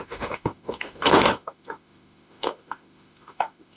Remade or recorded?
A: remade